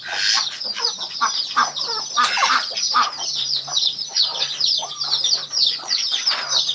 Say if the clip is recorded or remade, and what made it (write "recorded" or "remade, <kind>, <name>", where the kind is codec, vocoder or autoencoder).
recorded